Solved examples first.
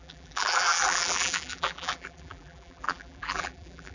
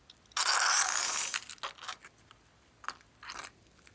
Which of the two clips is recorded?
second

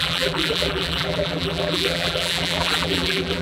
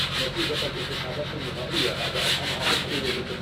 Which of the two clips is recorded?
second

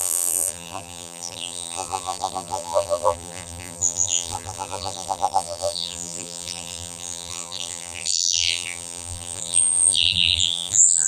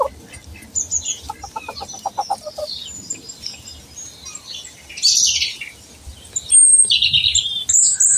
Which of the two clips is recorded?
second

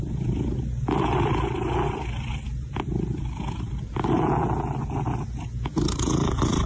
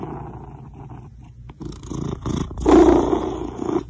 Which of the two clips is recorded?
second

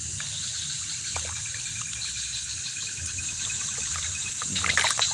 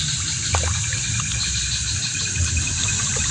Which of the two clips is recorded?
second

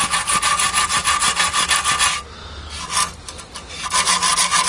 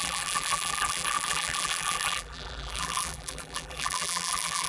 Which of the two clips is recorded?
first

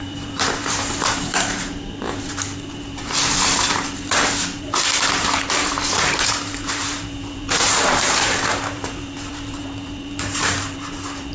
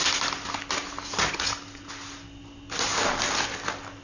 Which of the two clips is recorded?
second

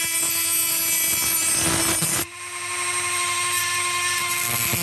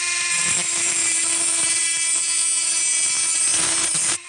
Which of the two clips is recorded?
first